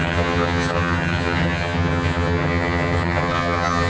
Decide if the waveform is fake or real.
fake